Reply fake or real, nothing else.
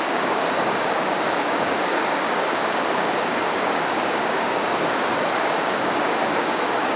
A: fake